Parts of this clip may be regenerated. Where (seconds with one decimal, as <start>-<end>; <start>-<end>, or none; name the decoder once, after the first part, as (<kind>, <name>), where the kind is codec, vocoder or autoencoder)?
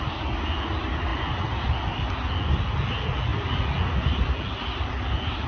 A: none